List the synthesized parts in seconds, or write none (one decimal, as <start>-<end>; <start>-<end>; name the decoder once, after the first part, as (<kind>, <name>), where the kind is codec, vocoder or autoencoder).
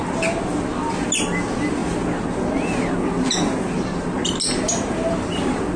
none